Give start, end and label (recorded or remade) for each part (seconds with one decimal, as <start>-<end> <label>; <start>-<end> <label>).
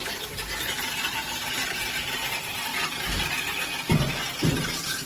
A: 0.0-2.7 remade; 2.7-5.1 recorded